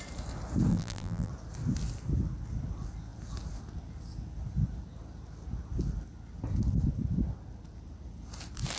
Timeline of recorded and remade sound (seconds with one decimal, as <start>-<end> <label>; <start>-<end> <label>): 0.0-0.7 recorded; 0.7-1.3 remade; 1.3-8.8 recorded